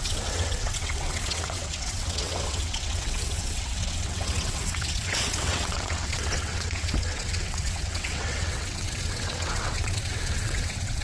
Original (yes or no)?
no